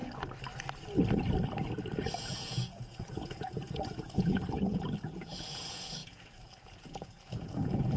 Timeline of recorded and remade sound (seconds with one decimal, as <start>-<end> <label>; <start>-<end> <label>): 0.0-2.2 recorded; 2.2-8.0 remade